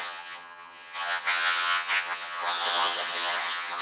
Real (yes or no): no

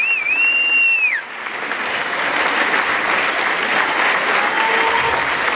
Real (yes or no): yes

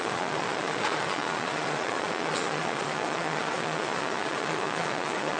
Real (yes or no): no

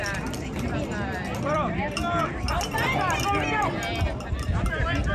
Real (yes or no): yes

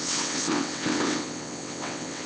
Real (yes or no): no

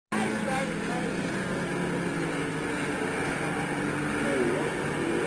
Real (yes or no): yes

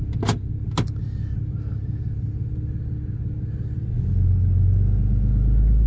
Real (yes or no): yes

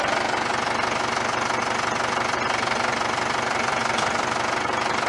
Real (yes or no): yes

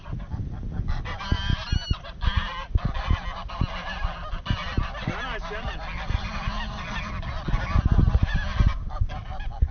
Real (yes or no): yes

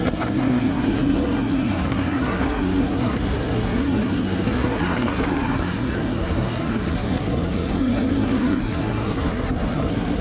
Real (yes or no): no